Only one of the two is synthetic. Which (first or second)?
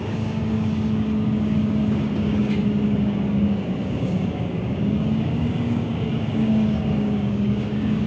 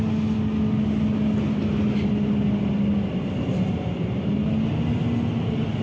first